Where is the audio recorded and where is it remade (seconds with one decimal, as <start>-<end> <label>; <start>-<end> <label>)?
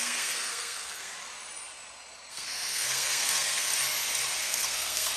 0.0-1.1 remade; 1.1-2.3 recorded; 2.3-3.7 remade; 3.7-4.4 recorded; 4.4-5.2 remade